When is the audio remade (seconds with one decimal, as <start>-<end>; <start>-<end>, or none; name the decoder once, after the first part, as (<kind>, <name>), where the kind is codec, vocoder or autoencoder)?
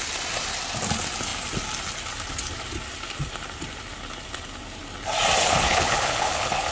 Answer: 5.4-6.7 (codec, HILCodec)